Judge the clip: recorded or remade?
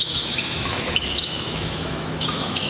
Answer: remade